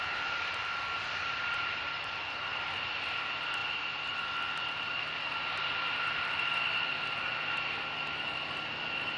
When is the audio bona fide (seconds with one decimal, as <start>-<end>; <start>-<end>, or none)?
0.0-9.2